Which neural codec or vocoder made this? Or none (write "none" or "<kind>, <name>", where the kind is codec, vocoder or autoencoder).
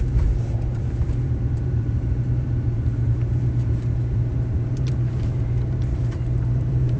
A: vocoder, BigVGAN v2